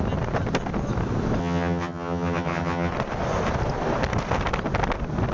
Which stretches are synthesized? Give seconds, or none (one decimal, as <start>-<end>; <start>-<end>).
1.4-2.9